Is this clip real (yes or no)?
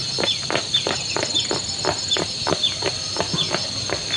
no